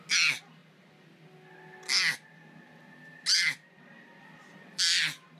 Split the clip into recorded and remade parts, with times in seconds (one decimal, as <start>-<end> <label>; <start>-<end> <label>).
0.0-5.4 recorded